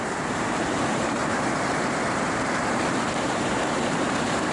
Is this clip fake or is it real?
fake